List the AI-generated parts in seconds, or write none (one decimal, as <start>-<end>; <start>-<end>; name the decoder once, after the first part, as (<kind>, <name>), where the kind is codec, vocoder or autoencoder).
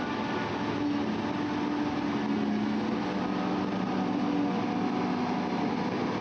none